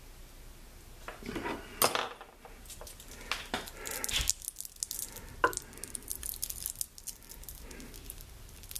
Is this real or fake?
real